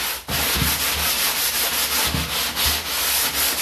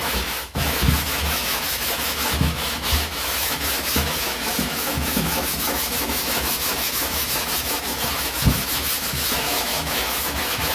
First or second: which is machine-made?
second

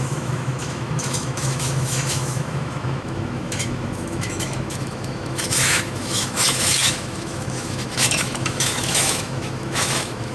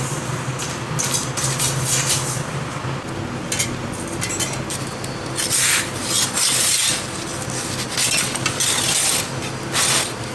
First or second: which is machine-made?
first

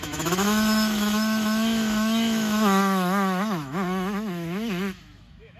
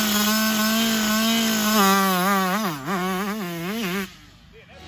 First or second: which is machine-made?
first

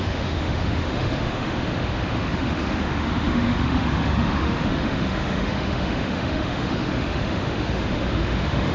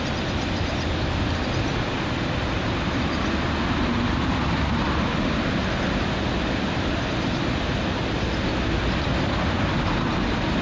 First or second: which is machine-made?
first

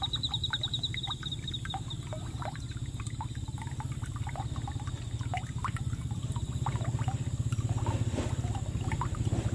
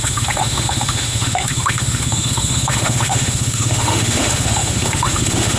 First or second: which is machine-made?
second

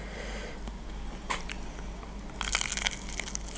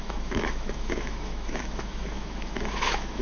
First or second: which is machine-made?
second